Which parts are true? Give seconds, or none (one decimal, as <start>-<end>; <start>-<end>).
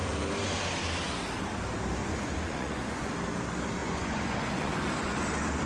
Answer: 0.0-2.0; 3.1-3.8; 5.2-5.7